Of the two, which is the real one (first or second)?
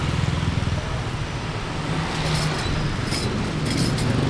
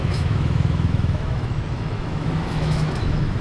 first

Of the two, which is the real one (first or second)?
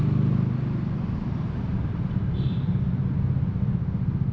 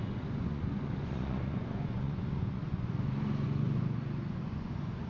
first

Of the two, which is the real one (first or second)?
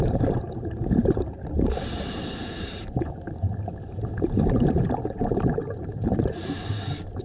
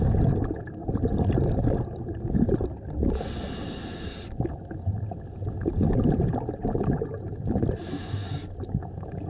second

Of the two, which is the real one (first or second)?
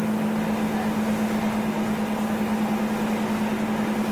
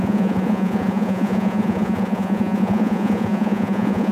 first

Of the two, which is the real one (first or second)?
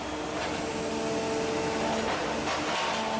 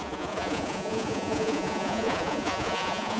first